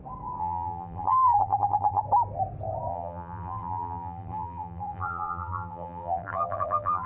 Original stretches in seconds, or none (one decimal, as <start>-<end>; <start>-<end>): 0.0-0.4; 2.0-2.9